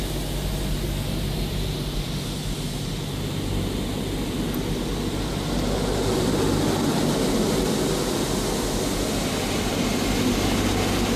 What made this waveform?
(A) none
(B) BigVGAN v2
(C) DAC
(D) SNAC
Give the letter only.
A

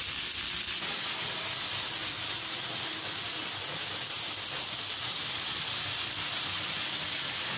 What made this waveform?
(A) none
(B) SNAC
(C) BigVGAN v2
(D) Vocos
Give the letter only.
A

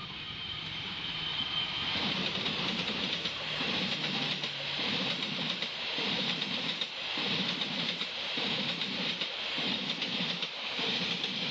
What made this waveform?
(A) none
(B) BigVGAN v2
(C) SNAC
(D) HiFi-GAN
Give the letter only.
B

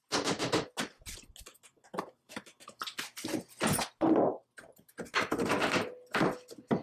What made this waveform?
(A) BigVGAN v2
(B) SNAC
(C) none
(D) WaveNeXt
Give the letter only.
C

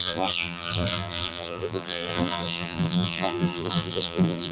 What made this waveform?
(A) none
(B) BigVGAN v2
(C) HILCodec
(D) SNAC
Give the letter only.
B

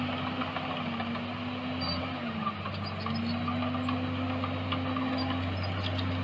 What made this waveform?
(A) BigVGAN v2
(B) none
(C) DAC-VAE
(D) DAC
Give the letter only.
B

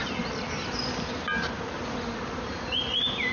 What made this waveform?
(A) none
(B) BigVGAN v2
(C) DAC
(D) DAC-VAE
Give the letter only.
A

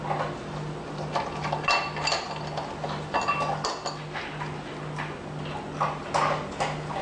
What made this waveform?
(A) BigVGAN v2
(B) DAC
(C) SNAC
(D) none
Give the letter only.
D